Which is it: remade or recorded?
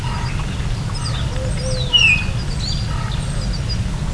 recorded